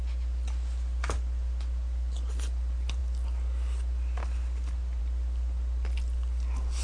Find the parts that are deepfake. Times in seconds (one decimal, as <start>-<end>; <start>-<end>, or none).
none